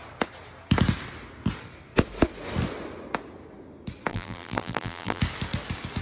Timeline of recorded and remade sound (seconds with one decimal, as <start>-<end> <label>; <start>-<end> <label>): 0.0-4.1 recorded; 4.1-5.2 remade; 5.2-6.0 recorded